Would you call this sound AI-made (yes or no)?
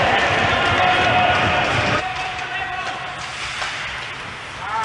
no